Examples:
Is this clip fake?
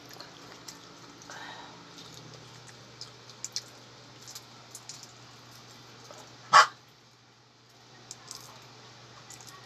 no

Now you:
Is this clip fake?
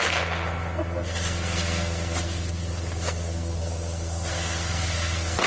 yes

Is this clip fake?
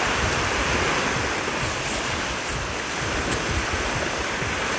yes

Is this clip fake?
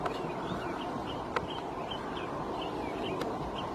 no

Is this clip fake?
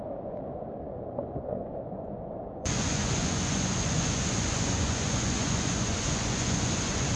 yes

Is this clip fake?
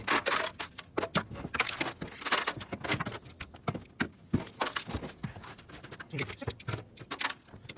no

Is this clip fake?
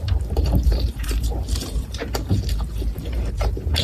yes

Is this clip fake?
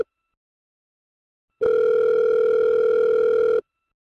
no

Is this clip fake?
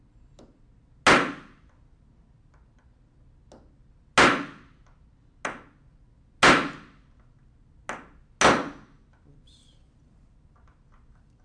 no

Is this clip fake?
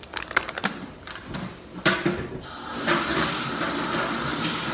no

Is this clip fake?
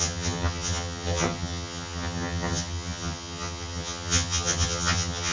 yes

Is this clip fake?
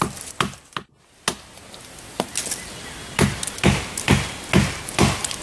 no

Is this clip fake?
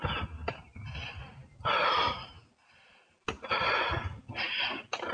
no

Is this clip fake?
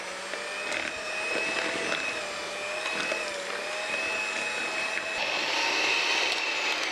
no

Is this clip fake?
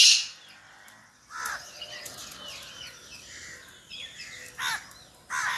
no